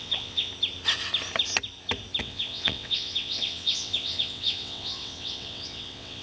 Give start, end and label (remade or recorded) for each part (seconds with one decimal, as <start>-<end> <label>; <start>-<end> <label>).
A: 0.0-0.5 remade; 0.5-2.2 recorded; 2.2-6.2 remade